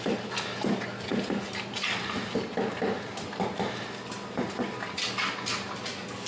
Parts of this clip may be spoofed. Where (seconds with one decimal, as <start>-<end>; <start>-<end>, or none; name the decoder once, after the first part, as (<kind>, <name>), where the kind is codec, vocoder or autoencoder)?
none